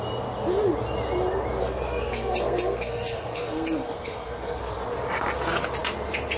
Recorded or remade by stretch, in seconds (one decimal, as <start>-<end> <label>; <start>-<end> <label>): 0.0-1.6 recorded; 1.6-4.6 remade; 4.6-6.4 recorded